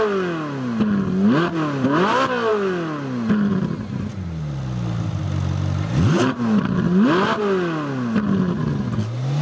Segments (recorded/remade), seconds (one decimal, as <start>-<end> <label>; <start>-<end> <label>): 0.0-9.4 recorded